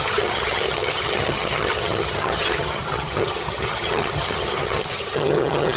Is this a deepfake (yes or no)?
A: yes